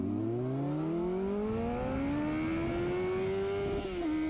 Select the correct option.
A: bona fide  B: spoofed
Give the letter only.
A